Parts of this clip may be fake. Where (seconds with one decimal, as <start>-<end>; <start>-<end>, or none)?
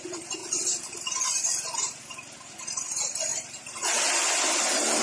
none